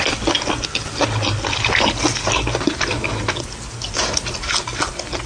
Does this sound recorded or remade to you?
recorded